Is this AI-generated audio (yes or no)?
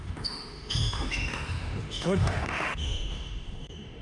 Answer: yes